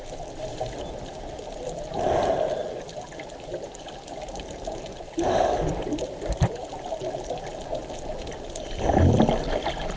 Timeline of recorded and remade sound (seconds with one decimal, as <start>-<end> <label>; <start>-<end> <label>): 0.0-10.0 recorded